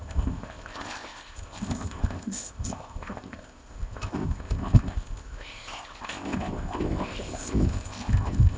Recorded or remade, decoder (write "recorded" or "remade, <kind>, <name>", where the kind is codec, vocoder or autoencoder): remade, codec, ZipCodec